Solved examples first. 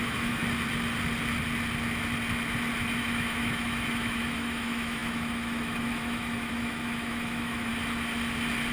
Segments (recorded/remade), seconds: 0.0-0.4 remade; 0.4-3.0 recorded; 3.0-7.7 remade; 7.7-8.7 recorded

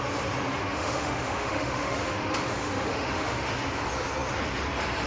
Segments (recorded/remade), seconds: 0.0-0.5 recorded; 0.5-3.6 remade; 3.6-5.1 recorded